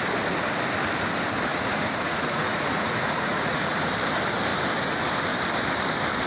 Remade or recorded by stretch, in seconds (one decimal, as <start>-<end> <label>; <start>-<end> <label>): 0.0-1.5 recorded; 1.5-3.9 remade; 3.9-6.3 recorded